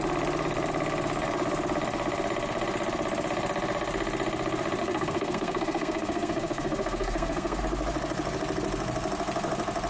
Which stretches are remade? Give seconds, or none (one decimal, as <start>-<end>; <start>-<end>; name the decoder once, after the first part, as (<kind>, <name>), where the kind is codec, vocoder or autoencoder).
4.8-7.6 (codec, SNAC)